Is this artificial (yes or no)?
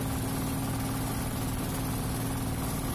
no